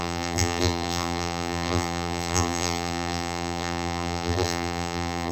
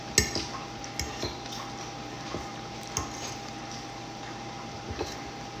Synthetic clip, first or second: first